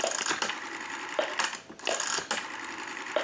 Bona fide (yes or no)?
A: yes